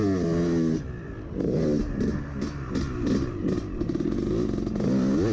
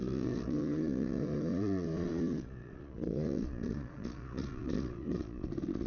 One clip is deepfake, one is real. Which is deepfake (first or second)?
second